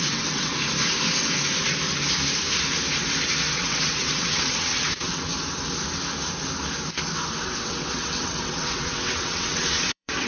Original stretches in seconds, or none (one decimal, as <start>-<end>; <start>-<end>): 0.5-3.4; 5.3-7.6